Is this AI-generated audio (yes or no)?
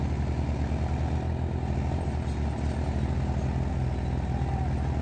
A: no